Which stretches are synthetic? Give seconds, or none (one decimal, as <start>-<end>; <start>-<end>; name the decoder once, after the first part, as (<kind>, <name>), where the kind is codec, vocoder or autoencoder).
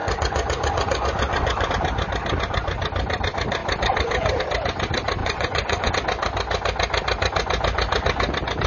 0.0-1.7 (vocoder, Vocos); 5.2-5.9